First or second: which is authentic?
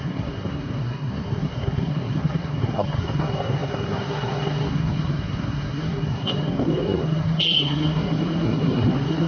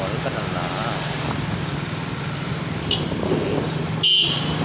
second